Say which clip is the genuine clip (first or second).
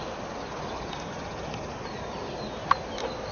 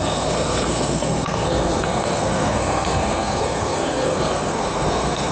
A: first